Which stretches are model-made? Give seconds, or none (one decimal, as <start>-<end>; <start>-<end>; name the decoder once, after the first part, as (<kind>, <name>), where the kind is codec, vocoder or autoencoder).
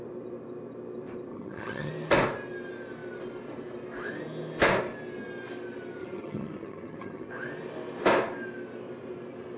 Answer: 1.3-1.9 (vocoder, HiFi-GAN); 6.0-7.3